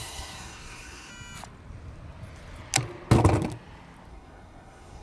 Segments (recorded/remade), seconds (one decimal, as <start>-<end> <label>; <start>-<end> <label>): 0.0-1.1 remade; 1.1-4.1 recorded; 4.1-5.0 remade